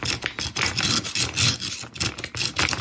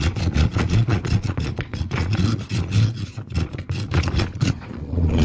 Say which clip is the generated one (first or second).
second